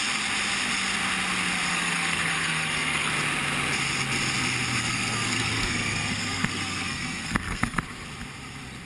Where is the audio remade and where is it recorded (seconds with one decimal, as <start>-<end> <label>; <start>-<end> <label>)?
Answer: 0.0-1.7 recorded; 1.7-3.1 remade; 3.1-4.8 recorded; 4.8-7.8 remade; 7.8-8.9 recorded